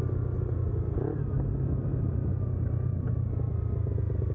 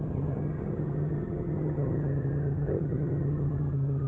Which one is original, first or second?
first